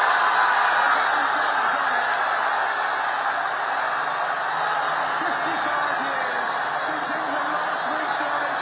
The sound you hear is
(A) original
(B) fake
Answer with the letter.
A